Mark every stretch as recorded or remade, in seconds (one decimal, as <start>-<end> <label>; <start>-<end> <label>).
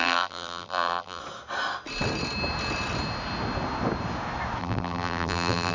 0.0-1.2 remade; 1.2-4.6 recorded; 4.6-5.7 remade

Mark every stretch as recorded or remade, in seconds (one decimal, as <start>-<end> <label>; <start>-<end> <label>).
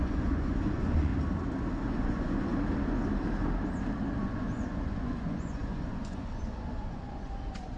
0.0-1.1 remade; 1.1-1.8 recorded; 1.8-2.5 remade; 2.5-4.2 recorded; 4.2-7.8 remade